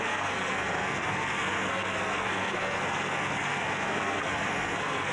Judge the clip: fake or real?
fake